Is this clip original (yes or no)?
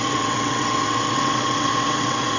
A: no